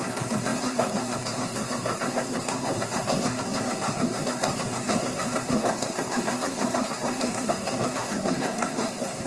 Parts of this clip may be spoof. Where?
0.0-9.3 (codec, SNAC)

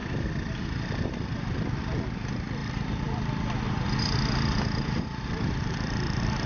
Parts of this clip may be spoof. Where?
0.0-1.3 (vocoder, BigVGAN v2); 2.6-6.5

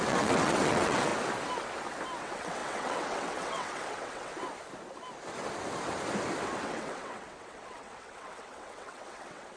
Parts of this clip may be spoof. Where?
0.0-1.1 (vocoder, WaveNeXt); 2.2-4.3; 6.6-9.6